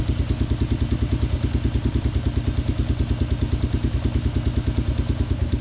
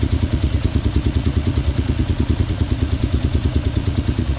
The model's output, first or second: second